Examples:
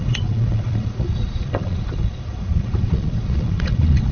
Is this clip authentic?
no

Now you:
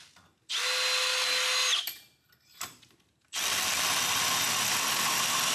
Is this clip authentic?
yes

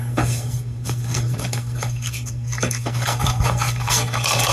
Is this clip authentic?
no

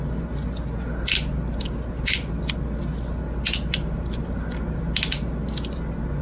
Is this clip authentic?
yes